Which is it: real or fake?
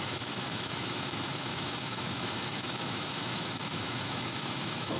fake